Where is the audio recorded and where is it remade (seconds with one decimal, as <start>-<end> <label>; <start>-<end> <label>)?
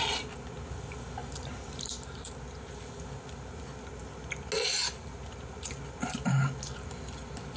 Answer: 0.0-1.2 recorded; 1.2-2.3 remade; 2.3-4.8 recorded; 4.8-5.8 remade; 5.8-7.6 recorded